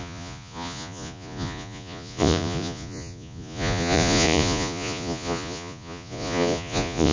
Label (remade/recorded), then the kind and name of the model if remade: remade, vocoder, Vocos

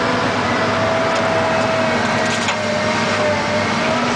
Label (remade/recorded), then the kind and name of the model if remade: recorded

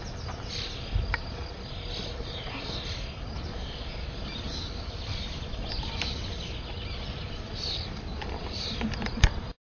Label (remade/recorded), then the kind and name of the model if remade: recorded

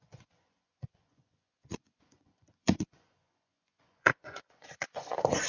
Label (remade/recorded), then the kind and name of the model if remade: remade, vocoder, Vocos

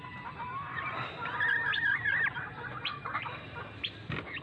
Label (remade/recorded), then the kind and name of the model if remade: recorded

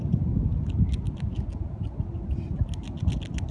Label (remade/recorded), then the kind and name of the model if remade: recorded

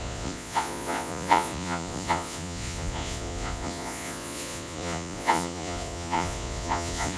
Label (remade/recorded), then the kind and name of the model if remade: remade, vocoder, Vocos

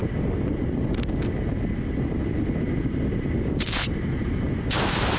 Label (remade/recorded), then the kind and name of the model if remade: recorded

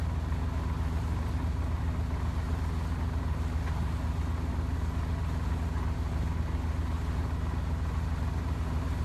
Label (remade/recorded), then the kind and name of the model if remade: recorded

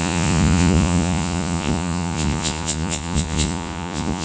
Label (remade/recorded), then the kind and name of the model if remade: remade, vocoder, Vocos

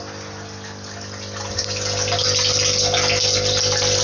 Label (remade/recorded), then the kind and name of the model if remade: recorded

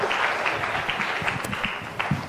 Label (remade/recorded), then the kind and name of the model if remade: recorded